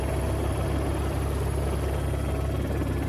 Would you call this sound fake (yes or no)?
no